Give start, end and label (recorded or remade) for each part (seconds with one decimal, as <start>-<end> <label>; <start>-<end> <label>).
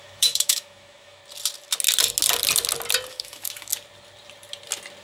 0.0-1.2 remade; 1.2-3.1 recorded; 3.1-3.7 remade; 3.7-5.0 recorded